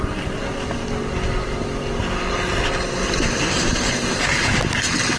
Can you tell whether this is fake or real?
real